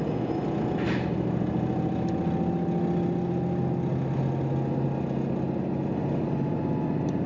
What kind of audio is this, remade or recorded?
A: recorded